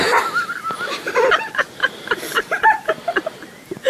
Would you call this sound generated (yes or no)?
no